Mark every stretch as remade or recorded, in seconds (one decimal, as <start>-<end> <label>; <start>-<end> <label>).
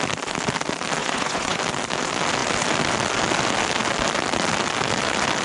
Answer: 0.0-1.0 recorded; 1.0-1.6 remade; 1.6-5.4 recorded